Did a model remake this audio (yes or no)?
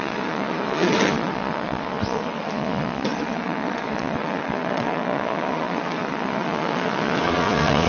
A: yes